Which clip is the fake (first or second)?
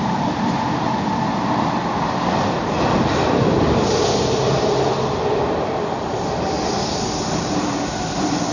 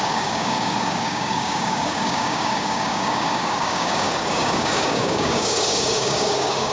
second